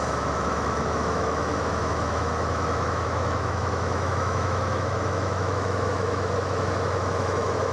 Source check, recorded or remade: remade